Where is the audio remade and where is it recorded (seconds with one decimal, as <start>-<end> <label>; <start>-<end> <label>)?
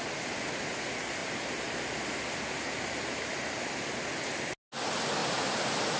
0.0-1.2 recorded; 1.2-3.7 remade; 3.7-5.2 recorded; 5.2-6.0 remade